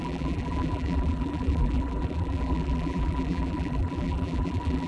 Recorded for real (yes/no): no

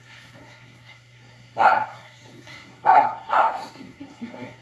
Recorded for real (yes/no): no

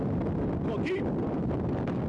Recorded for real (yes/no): yes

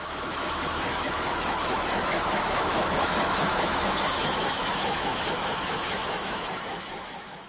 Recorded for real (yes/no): no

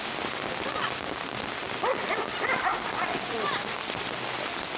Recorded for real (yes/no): yes